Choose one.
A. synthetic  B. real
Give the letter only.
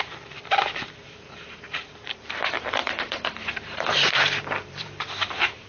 A